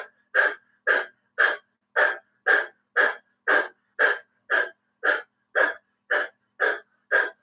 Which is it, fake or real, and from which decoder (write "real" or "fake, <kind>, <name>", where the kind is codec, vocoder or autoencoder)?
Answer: real